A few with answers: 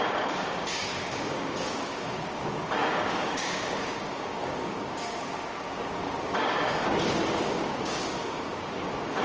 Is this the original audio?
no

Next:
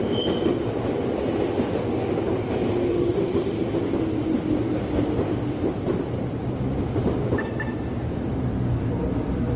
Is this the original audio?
no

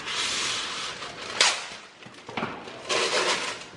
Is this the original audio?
yes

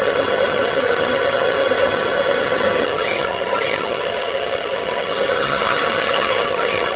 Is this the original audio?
no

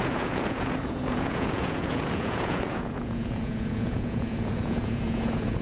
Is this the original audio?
no